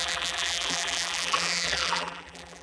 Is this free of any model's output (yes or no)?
no